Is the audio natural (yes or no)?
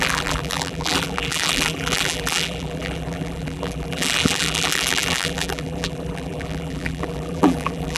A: no